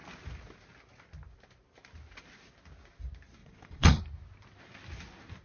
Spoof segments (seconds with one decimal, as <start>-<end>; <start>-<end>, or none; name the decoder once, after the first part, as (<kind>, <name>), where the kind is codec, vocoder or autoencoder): 3.4-4.0 (vocoder, Vocos)